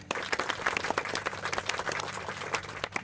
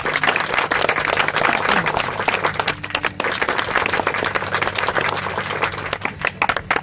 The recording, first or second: second